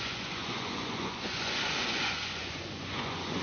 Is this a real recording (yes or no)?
no